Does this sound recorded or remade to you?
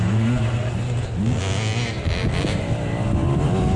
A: recorded